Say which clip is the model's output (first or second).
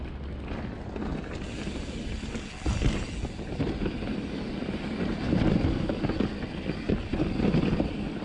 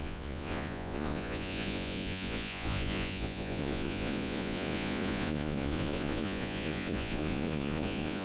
second